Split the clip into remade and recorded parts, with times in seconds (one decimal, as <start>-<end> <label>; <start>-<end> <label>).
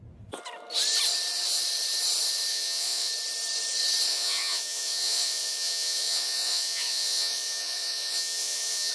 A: 0.0-2.5 recorded; 2.5-3.1 remade; 3.1-4.1 recorded; 4.1-8.9 remade